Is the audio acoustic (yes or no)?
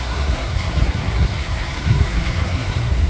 no